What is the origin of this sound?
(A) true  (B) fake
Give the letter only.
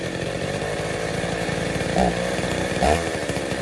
B